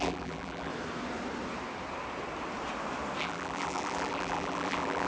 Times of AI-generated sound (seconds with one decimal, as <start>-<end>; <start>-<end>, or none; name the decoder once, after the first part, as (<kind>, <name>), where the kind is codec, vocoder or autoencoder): 0.0-0.7 (vocoder, BigVGAN v2); 3.2-5.1